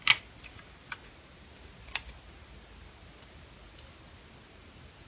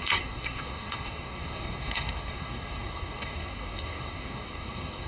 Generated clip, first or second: second